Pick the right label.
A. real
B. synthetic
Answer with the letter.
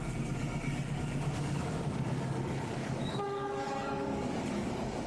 B